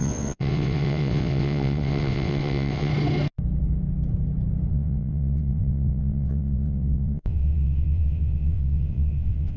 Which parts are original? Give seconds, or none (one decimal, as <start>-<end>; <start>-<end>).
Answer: 2.9-4.7

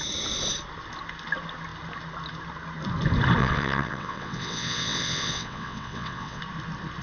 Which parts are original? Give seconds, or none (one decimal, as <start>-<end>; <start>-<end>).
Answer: 0.0-3.4; 6.4-7.0